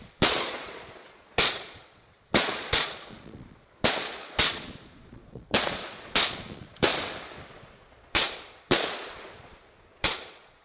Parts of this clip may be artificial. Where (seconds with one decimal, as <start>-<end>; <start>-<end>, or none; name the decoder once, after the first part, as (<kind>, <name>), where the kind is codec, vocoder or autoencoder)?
0.0-6.9 (vocoder, Vocos); 7.5-10.6